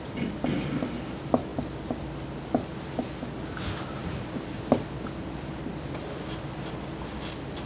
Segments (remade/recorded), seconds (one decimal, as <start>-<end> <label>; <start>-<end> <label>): 0.0-4.0 recorded; 4.0-5.5 remade; 5.5-7.7 recorded